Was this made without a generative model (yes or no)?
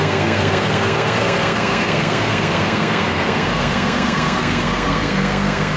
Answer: no